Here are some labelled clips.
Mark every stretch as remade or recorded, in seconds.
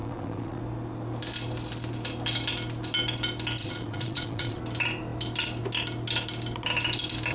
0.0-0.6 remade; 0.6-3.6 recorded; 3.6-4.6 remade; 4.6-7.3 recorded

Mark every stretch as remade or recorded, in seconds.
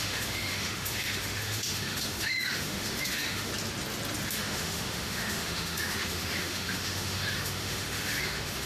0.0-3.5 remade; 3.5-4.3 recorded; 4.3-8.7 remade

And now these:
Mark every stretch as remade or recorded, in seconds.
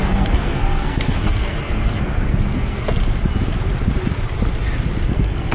0.0-2.8 remade; 2.8-5.1 recorded; 5.1-5.5 remade